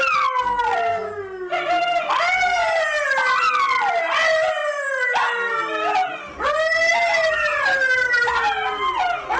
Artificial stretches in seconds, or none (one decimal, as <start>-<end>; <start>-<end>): 7.5-8.7

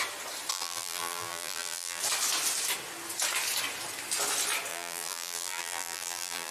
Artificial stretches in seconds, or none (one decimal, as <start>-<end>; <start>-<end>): 0.5-2.0; 4.7-6.5